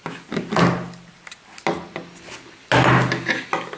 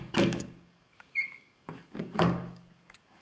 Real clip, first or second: first